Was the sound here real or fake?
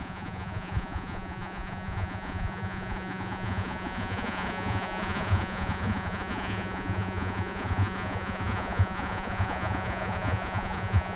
fake